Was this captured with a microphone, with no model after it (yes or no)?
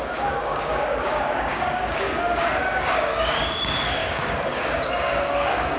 no